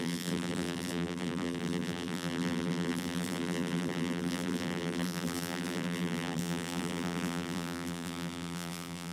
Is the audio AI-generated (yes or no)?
yes